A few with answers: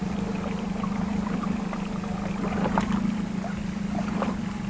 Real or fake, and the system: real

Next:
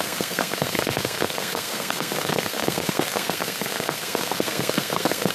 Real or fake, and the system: fake, codec, SNAC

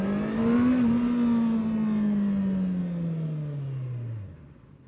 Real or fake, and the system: real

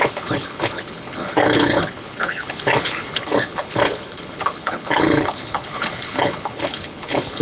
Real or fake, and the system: fake, codec, HILCodec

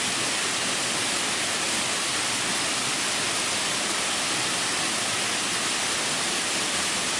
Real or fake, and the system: real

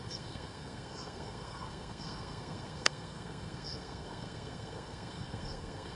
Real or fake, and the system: fake, codec, SNAC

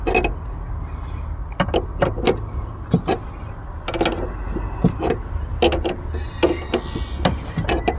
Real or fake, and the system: real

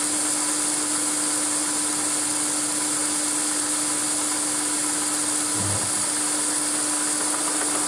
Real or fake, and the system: real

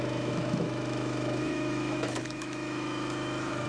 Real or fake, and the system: fake, autoencoder, DAC-VAE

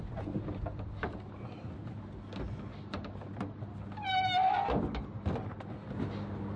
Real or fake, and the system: real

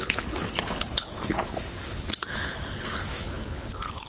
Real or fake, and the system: fake, codec, HILCodec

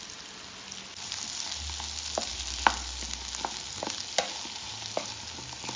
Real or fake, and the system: real